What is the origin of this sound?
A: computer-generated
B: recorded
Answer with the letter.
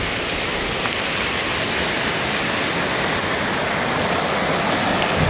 B